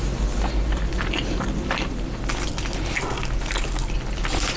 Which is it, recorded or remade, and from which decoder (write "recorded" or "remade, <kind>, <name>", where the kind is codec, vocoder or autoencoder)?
recorded